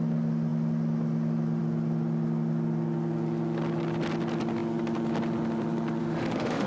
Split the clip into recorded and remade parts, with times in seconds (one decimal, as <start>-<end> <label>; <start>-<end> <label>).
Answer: 0.0-6.0 recorded; 6.0-6.7 remade